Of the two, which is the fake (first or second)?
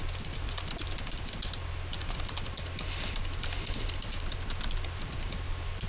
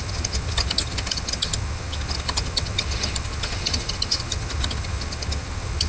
second